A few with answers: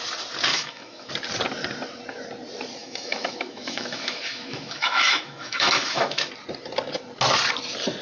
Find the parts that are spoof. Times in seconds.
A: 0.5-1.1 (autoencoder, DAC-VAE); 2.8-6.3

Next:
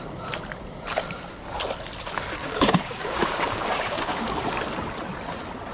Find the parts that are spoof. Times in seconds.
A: 2.4-4.2 (codec, DAC)